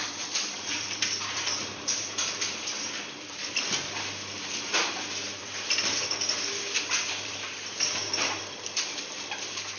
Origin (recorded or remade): remade